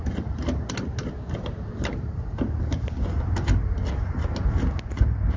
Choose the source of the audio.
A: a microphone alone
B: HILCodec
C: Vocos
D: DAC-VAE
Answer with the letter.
A